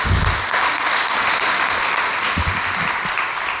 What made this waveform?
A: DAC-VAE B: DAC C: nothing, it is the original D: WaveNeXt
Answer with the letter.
C